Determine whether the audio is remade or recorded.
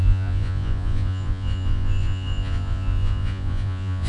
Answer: remade